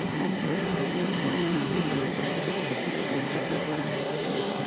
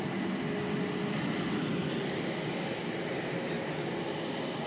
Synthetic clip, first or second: first